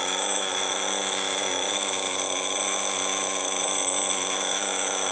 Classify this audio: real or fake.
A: fake